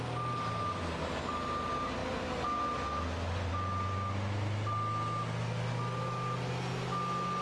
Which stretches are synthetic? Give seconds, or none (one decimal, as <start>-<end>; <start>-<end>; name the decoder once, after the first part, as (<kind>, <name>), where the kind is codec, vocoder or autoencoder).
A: none